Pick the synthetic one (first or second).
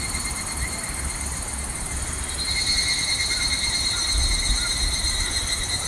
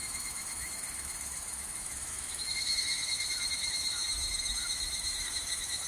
second